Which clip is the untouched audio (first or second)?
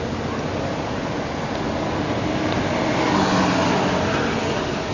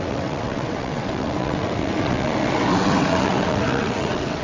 first